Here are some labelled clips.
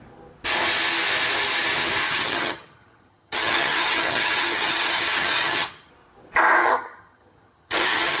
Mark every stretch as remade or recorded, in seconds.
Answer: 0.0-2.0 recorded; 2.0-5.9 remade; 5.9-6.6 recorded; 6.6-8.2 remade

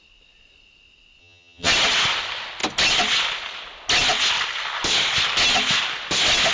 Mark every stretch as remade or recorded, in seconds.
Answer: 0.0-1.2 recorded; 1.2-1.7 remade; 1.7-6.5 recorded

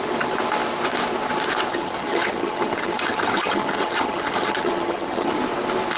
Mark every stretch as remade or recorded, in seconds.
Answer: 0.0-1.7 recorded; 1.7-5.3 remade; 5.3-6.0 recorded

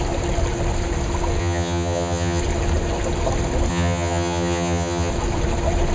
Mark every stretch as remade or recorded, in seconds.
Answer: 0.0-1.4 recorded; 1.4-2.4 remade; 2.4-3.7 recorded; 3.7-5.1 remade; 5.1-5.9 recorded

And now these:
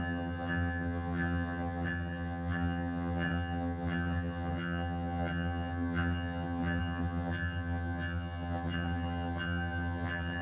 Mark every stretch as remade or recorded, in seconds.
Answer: 0.0-10.4 remade

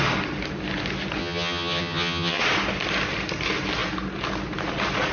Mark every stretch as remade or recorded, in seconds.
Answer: 0.0-1.2 recorded; 1.2-2.4 remade; 2.4-5.1 recorded

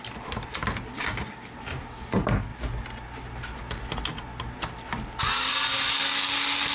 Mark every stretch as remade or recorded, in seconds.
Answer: 0.0-6.7 recorded

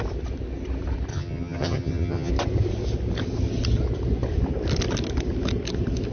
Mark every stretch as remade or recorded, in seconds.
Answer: 0.0-1.1 recorded; 1.1-2.3 remade; 2.3-6.1 recorded